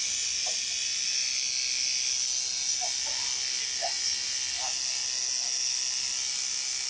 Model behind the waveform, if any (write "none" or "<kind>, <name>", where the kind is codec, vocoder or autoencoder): none